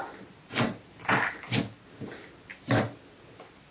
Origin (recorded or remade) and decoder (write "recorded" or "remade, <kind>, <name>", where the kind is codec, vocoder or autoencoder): recorded